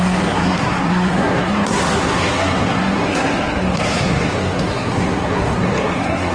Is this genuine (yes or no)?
no